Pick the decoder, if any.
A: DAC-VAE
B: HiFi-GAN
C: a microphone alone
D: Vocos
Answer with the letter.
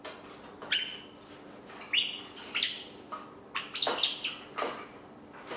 C